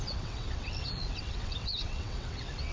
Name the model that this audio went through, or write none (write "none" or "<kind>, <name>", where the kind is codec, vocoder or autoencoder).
vocoder, WaveNeXt